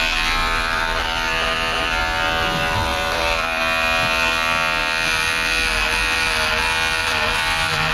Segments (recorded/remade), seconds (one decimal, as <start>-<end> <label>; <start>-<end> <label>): 0.0-0.4 recorded; 0.4-2.0 remade; 2.0-2.9 recorded; 2.9-3.6 remade; 3.6-7.0 recorded; 7.0-7.9 remade